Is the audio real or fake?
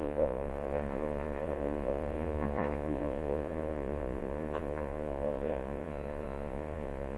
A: fake